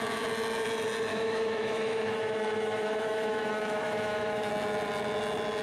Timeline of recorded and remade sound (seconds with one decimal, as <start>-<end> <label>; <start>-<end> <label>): 0.0-1.1 recorded; 1.1-4.5 remade; 4.5-5.6 recorded